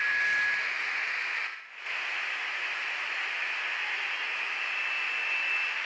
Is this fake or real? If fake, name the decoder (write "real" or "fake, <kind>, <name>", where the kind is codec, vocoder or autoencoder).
real